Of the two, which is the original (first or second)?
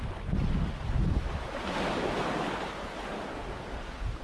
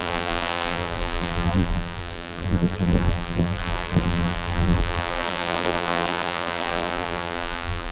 first